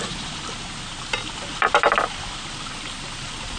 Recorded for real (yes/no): yes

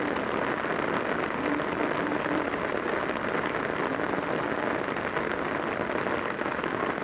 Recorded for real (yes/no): yes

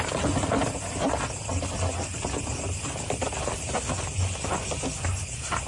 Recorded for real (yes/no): yes